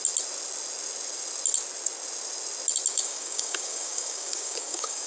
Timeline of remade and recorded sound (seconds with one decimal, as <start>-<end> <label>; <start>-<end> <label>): 0.0-2.9 recorded; 2.9-5.1 remade